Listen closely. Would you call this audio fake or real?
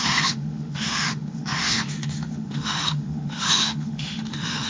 fake